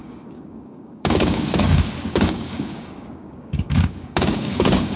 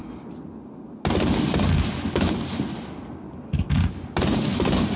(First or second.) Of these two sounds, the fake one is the first